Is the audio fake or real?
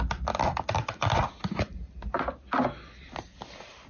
real